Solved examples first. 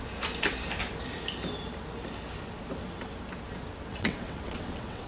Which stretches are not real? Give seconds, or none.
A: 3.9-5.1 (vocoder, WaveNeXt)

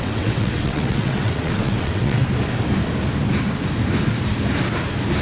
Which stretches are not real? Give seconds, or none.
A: 0.0-2.2 (vocoder, WaveNeXt)

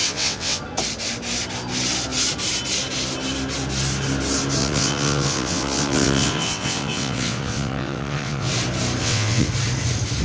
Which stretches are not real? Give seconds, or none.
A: 0.0-0.6 (vocoder, WaveNeXt); 4.6-8.5; 9.0-9.5

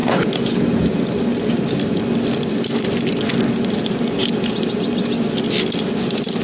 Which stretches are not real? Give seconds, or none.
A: none

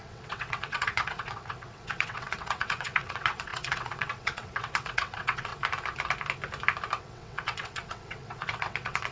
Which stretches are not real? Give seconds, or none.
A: 0.0-5.5 (vocoder, WaveNeXt); 7.0-9.1

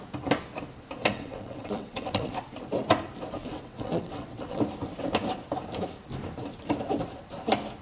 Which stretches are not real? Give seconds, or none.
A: 1.0-2.3 (vocoder, WaveNeXt); 3.4-4.6

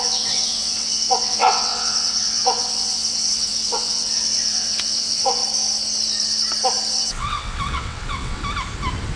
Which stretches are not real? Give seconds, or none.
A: 0.0-5.4 (vocoder, WaveNeXt); 6.9-8.4